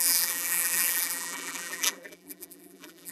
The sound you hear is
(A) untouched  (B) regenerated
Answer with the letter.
B